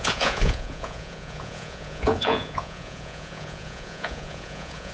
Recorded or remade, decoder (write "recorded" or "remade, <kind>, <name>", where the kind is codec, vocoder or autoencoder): remade, vocoder, Vocos